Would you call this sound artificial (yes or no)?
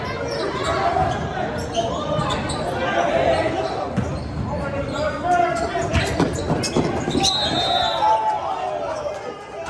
no